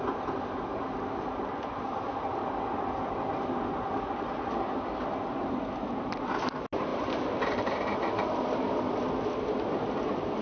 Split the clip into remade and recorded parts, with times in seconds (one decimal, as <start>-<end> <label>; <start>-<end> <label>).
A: 0.0-6.9 recorded; 6.9-8.4 remade; 8.4-10.4 recorded

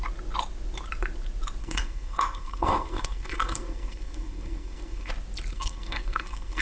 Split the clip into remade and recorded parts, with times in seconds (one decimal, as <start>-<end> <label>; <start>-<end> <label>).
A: 0.0-1.6 recorded; 1.6-5.1 remade; 5.1-5.5 recorded; 5.5-6.6 remade

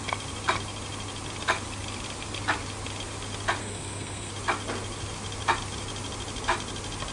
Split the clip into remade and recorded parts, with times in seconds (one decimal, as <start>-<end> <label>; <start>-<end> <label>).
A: 0.0-3.6 recorded; 3.6-4.3 remade; 4.3-7.1 recorded

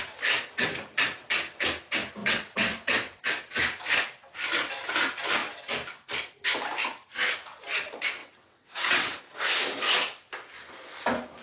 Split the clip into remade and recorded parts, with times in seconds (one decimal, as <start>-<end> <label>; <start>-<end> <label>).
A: 0.0-2.2 recorded; 2.2-3.2 remade; 3.2-8.2 recorded; 8.2-9.2 remade; 9.2-11.4 recorded

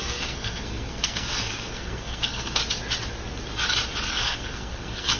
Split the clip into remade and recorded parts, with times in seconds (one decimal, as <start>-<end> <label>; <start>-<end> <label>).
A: 0.0-2.6 remade; 2.6-4.1 recorded; 4.1-5.2 remade

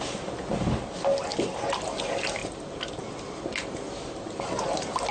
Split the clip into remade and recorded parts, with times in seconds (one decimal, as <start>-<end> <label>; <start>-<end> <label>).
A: 0.0-5.1 recorded

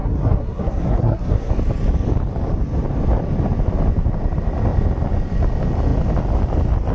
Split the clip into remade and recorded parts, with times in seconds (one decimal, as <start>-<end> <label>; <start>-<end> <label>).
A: 0.0-1.5 remade; 1.5-6.9 recorded